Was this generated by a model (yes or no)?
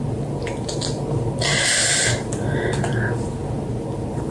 no